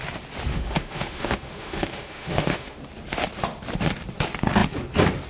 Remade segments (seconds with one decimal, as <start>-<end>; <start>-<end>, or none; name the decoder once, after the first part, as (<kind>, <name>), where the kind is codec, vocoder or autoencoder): 0.5-2.8 (autoencoder, DAC-VAE)